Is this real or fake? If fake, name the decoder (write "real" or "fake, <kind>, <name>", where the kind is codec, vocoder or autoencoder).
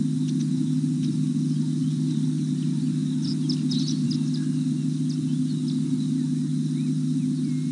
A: real